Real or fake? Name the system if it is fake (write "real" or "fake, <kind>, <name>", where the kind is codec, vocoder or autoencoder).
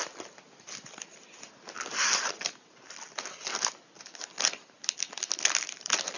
real